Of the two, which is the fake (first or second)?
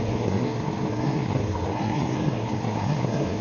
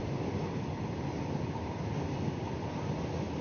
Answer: first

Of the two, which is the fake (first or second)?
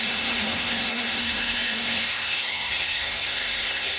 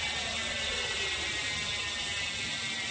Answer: first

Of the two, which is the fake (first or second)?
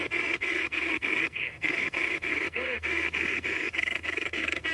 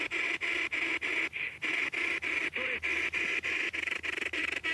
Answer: first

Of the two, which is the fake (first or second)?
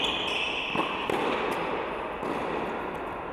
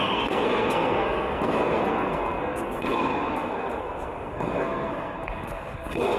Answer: second